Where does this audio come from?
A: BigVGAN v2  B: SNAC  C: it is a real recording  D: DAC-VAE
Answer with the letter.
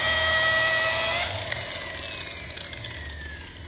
C